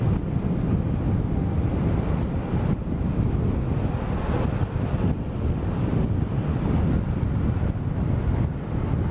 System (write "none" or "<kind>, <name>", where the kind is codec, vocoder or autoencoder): none